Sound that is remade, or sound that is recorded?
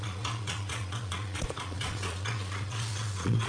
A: remade